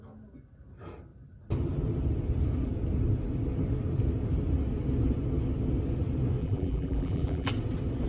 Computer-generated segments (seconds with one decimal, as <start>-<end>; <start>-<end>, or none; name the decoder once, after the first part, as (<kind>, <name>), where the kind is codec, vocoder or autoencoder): 6.4-7.5 (vocoder, BigVGAN v2)